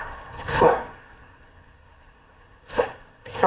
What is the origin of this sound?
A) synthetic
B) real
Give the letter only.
A